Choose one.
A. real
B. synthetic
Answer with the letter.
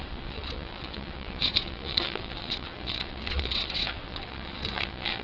B